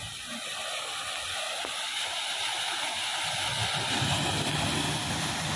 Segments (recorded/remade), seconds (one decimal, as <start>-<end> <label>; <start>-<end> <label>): 0.0-0.5 recorded; 0.5-1.0 remade; 1.0-3.1 recorded; 3.1-5.1 remade; 5.1-5.6 recorded